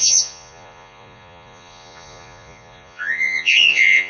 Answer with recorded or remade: remade